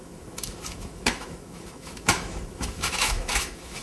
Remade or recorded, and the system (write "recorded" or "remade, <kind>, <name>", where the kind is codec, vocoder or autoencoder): remade, autoencoder, DAC-VAE